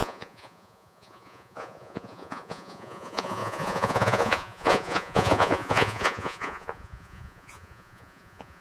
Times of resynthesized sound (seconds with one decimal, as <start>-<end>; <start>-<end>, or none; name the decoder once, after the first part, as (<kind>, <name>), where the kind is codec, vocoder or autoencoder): 0.0-8.6 (vocoder, Vocos)